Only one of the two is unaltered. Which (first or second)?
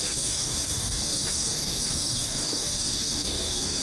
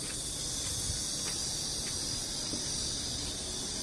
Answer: second